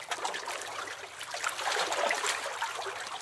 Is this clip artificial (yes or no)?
no